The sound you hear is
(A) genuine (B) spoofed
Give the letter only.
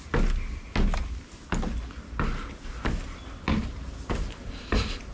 A